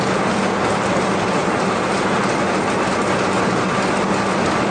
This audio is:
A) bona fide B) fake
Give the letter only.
A